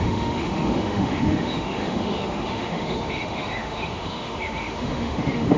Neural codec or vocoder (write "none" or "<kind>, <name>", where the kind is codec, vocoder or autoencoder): autoencoder, DAC-VAE